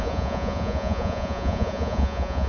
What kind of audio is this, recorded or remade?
remade